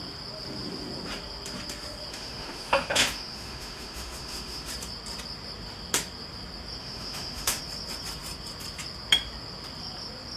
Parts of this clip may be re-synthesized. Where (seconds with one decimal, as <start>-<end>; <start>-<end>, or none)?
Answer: 2.1-4.7; 6.8-7.6